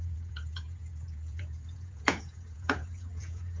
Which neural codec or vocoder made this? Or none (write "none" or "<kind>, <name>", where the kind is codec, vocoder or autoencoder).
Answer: vocoder, Vocos